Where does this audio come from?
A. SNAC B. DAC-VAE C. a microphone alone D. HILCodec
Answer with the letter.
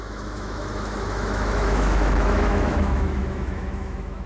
B